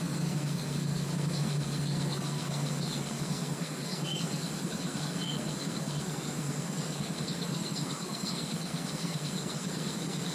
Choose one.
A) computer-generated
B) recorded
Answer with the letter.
A